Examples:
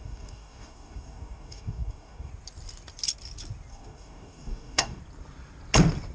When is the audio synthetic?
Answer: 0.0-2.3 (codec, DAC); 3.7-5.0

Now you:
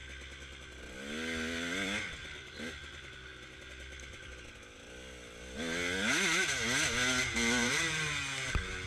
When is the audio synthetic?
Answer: 7.6-8.2 (vocoder, BigVGAN v2)

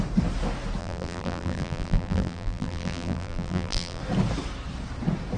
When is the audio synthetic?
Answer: 0.8-4.0 (vocoder, BigVGAN v2)

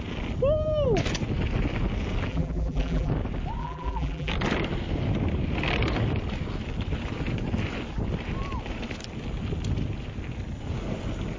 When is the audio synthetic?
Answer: 2.3-3.1 (vocoder, BigVGAN v2); 3.6-4.3

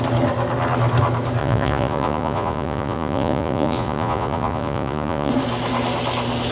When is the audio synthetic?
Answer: 1.4-5.3 (vocoder, Vocos)

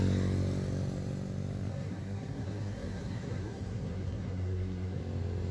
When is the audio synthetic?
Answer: 1.7-5.0 (codec, SNAC)